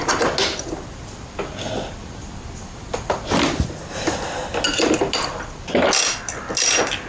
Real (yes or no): yes